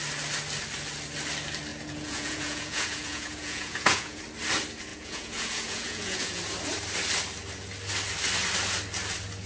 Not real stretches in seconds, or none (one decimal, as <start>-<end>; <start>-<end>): 1.7-4.2; 4.9-6.4